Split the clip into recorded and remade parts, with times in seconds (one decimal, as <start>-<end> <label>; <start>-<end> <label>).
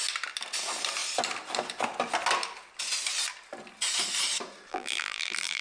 0.0-4.7 recorded; 4.7-5.6 remade